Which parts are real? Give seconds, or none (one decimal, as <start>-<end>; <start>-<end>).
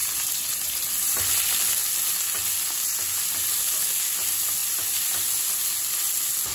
1.3-4.6; 5.3-6.5